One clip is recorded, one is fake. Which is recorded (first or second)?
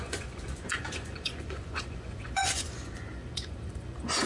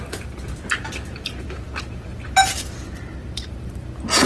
second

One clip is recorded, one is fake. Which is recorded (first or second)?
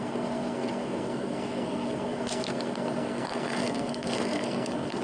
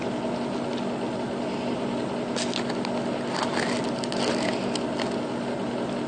second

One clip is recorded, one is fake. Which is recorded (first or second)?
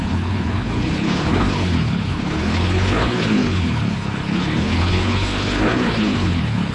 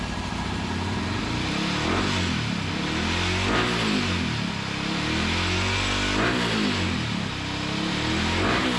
second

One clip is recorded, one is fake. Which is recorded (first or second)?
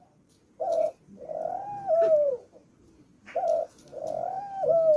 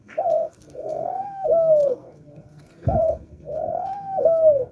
first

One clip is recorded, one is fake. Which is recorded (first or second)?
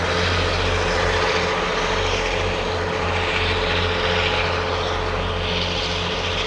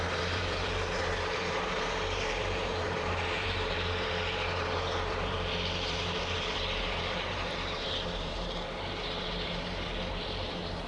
first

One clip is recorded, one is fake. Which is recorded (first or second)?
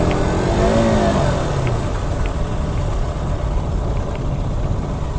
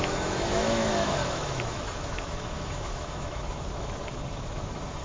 first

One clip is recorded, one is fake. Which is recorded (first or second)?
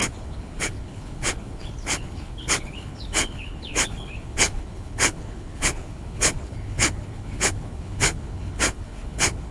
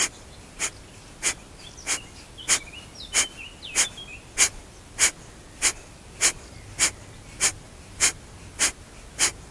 second